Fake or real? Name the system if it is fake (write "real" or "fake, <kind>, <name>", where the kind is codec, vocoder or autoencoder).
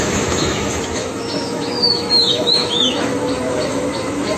fake, autoencoder, DAC-VAE